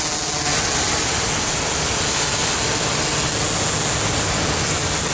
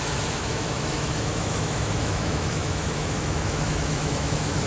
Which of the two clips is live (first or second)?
first